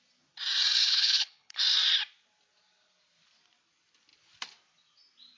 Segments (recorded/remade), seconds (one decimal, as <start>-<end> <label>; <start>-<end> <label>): 0.0-0.8 recorded; 0.8-1.6 remade; 1.6-5.4 recorded